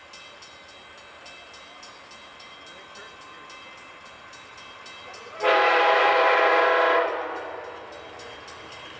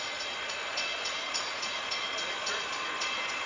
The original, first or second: first